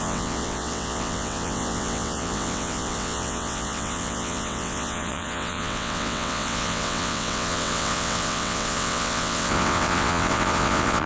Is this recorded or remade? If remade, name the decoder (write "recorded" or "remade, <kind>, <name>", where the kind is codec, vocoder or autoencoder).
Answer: remade, vocoder, WaveNeXt